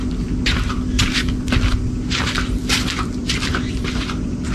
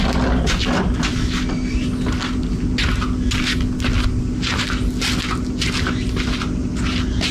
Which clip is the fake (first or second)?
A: first